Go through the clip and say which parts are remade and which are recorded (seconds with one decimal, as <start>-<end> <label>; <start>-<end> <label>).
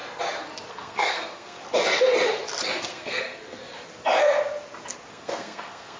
0.0-0.7 recorded; 0.7-1.6 remade; 1.6-2.8 recorded; 2.8-3.6 remade; 3.6-5.1 recorded; 5.1-6.0 remade